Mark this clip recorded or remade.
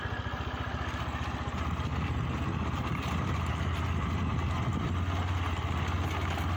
recorded